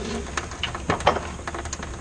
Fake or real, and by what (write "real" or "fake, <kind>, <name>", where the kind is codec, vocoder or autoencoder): real